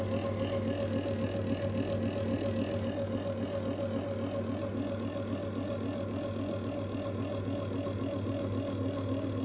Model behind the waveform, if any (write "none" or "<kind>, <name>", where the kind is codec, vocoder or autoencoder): none